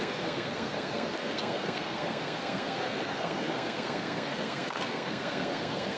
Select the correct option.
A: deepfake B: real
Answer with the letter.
A